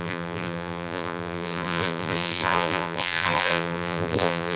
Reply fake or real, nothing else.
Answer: fake